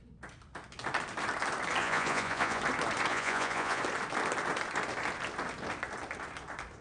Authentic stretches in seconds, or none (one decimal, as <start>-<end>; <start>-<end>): 0.0-1.8; 2.6-3.1; 3.8-6.8

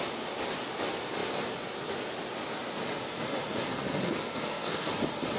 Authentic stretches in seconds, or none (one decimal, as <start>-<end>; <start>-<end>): 0.0-3.7; 4.9-5.4

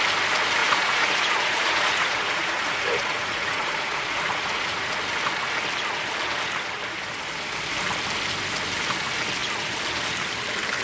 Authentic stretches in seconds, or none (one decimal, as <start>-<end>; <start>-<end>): 0.0-0.6; 4.9-10.8

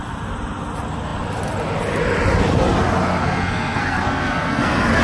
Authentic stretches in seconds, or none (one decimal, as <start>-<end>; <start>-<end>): 0.0-3.2